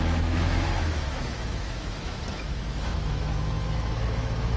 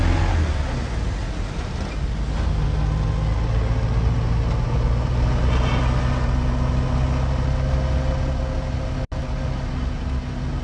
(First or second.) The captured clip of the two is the second